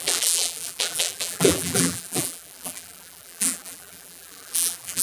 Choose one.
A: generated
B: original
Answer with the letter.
A